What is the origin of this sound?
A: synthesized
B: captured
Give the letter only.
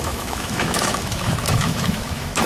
A